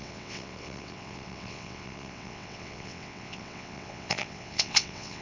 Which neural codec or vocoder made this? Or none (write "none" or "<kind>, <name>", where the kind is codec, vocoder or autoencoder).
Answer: vocoder, WaveNeXt